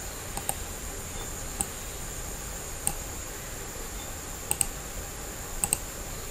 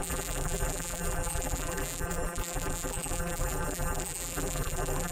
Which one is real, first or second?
first